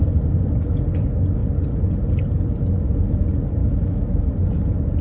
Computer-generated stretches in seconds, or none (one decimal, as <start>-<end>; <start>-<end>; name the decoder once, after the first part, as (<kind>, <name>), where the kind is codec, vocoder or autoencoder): 3.6-4.3 (autoencoder, DAC-VAE)